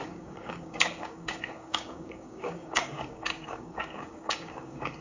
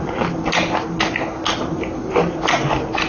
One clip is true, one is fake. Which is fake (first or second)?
first